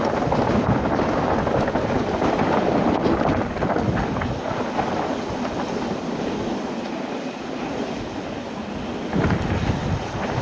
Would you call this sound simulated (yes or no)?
no